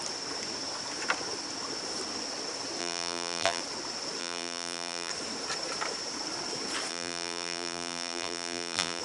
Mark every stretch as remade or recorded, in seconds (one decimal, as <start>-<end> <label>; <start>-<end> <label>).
0.0-2.8 recorded; 2.8-3.6 remade; 3.6-4.2 recorded; 4.2-5.1 remade; 5.1-6.9 recorded; 6.9-9.0 remade

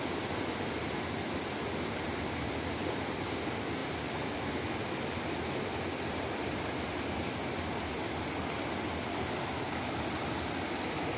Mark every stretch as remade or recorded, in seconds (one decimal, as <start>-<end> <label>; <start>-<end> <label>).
0.0-11.2 recorded

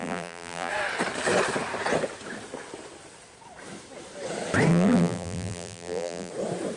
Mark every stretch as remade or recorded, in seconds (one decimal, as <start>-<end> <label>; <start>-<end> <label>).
0.0-0.7 remade; 0.7-4.7 recorded; 4.7-6.3 remade; 6.3-6.8 recorded

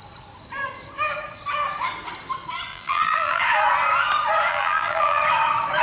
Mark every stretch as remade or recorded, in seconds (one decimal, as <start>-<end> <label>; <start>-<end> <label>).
0.0-2.7 recorded; 2.7-3.4 remade; 3.4-4.5 recorded; 4.5-5.2 remade; 5.2-5.8 recorded

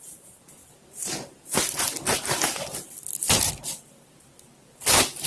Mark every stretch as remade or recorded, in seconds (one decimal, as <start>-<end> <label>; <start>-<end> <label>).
0.0-5.3 recorded

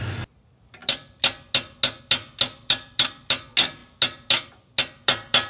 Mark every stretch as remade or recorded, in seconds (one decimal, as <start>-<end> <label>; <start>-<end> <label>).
0.0-5.5 recorded

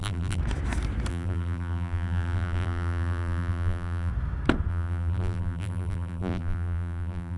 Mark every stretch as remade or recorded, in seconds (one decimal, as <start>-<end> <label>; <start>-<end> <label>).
0.0-0.4 remade; 0.4-1.1 recorded; 1.1-4.1 remade; 4.1-4.7 recorded; 4.7-7.4 remade

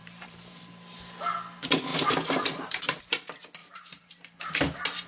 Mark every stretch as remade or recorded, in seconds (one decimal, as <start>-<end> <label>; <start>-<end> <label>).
0.0-0.5 remade; 0.5-1.9 recorded; 1.9-3.0 remade; 3.0-3.6 recorded; 3.6-4.5 remade; 4.5-5.1 recorded